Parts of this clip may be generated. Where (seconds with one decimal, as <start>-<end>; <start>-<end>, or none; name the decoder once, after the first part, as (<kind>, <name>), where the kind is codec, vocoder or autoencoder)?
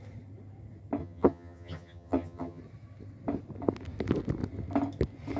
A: 1.0-2.6 (vocoder, HiFi-GAN)